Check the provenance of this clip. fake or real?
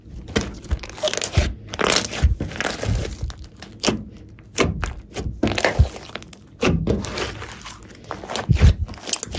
real